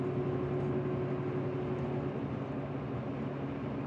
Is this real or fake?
real